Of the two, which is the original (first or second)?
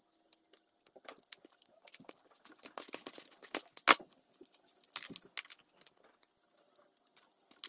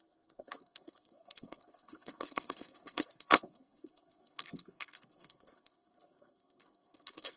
first